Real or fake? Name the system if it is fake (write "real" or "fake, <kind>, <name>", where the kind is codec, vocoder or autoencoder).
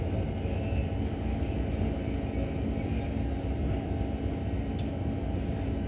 real